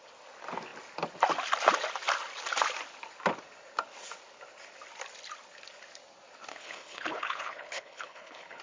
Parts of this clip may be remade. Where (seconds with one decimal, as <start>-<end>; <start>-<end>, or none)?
6.5-8.6